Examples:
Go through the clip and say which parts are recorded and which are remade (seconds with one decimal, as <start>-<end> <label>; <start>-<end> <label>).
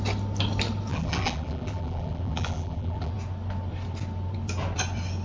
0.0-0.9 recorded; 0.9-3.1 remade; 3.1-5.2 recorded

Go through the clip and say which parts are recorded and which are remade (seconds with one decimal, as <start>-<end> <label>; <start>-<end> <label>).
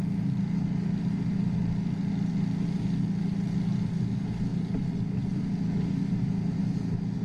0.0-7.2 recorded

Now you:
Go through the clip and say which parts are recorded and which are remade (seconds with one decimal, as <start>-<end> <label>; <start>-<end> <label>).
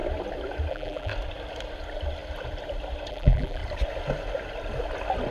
0.0-0.7 recorded; 0.7-1.1 remade; 1.1-3.1 recorded; 3.1-3.6 remade; 3.6-5.3 recorded